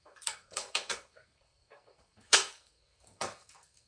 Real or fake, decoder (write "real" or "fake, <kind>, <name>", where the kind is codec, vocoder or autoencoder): fake, codec, SNAC